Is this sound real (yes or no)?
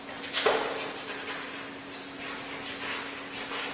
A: yes